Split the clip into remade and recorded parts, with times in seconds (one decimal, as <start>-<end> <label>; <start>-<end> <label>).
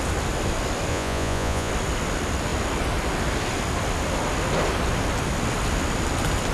0.0-0.9 recorded; 0.9-1.7 remade; 1.7-6.5 recorded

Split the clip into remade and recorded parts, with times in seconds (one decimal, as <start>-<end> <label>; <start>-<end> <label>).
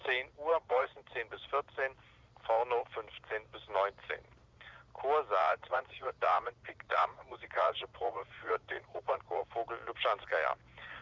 0.0-0.5 recorded; 0.5-1.1 remade; 1.1-5.4 recorded; 5.4-9.4 remade; 9.4-11.0 recorded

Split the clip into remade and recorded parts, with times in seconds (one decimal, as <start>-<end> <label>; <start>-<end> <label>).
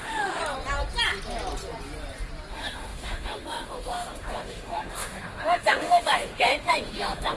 0.0-0.4 remade; 0.4-2.5 recorded; 2.5-7.4 remade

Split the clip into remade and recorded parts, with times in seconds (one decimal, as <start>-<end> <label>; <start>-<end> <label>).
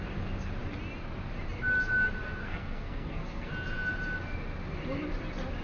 0.0-2.4 recorded; 2.4-3.5 remade; 3.5-5.6 recorded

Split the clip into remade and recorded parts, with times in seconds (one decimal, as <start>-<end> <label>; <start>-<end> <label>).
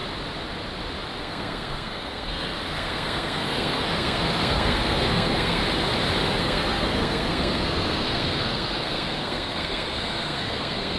0.0-1.2 recorded; 1.2-5.6 remade; 5.6-6.4 recorded; 6.4-11.0 remade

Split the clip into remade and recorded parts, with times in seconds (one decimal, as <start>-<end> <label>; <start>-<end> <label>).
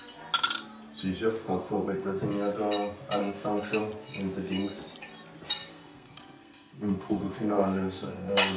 0.0-1.4 recorded; 1.4-2.2 remade; 2.2-3.2 recorded; 3.2-3.8 remade; 3.8-5.7 recorded; 5.7-8.6 remade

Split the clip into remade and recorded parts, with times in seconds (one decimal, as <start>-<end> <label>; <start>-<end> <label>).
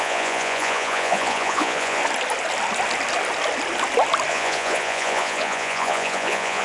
0.0-2.0 remade; 2.0-4.3 recorded; 4.3-6.6 remade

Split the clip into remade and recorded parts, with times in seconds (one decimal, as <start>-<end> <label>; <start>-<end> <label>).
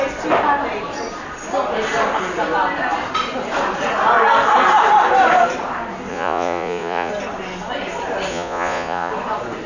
0.0-6.1 recorded; 6.1-7.1 remade; 7.1-8.3 recorded; 8.3-9.1 remade; 9.1-9.7 recorded